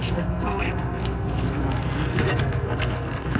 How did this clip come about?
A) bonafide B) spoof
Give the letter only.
B